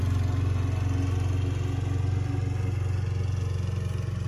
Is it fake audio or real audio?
real